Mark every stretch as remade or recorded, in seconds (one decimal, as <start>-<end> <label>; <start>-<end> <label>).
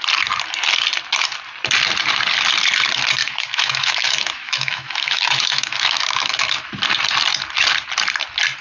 0.0-3.2 recorded; 3.2-6.7 remade; 6.7-8.6 recorded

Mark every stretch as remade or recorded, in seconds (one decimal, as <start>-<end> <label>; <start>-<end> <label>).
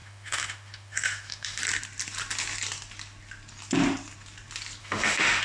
0.0-1.6 remade; 1.6-4.8 recorded; 4.8-5.4 remade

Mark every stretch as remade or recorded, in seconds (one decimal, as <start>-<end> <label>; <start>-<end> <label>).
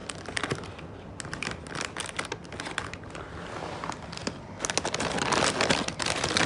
0.0-6.5 recorded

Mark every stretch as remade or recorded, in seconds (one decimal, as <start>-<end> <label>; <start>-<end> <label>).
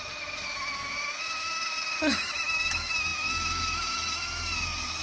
0.0-5.0 remade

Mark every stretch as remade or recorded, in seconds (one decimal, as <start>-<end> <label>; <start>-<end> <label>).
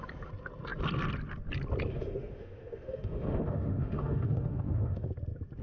0.0-1.9 recorded; 1.9-5.1 remade; 5.1-5.6 recorded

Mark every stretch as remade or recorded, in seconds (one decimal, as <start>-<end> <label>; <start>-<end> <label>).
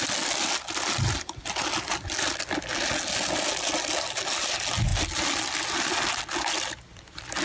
0.0-7.4 recorded